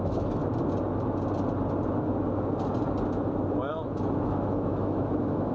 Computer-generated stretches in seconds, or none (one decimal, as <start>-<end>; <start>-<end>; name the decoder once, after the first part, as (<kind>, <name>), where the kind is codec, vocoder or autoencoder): 0.0-0.4 (autoencoder, DAC-VAE); 3.7-5.5